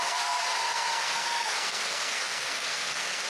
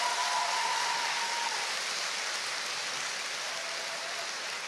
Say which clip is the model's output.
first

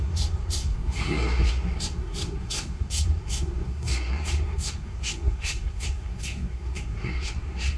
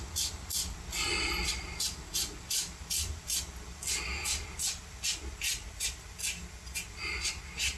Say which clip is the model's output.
first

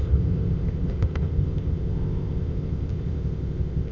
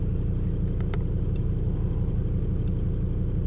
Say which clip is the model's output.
first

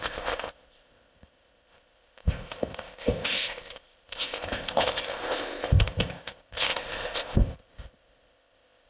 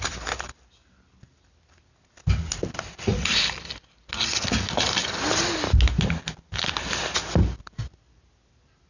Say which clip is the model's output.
first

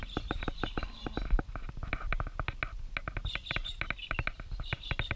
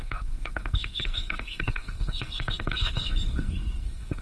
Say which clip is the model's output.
second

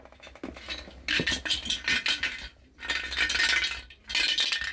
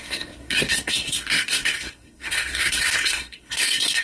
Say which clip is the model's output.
second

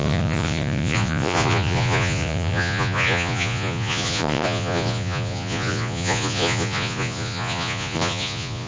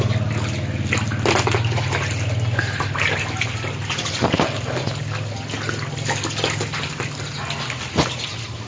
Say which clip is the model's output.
first